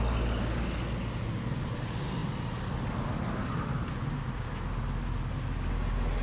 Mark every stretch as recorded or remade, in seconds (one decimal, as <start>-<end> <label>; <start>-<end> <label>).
0.0-6.2 recorded